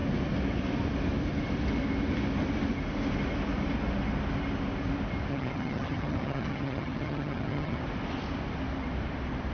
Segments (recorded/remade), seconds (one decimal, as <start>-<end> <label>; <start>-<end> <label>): 0.0-5.3 recorded; 5.3-7.8 remade; 7.8-9.5 recorded